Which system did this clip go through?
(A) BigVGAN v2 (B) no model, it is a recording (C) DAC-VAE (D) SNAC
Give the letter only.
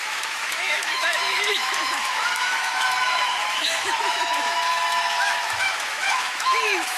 C